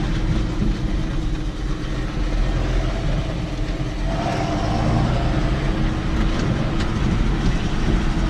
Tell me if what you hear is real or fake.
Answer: real